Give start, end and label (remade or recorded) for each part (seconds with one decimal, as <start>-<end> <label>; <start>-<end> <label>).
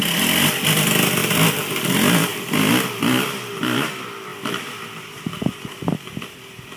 0.0-1.2 recorded; 1.2-1.7 remade; 1.7-4.3 recorded; 4.3-6.8 remade